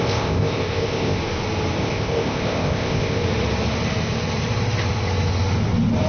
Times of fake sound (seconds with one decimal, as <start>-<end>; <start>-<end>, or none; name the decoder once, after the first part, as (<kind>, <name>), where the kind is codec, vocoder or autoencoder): 0.0-1.2 (codec, ZipCodec); 1.8-3.2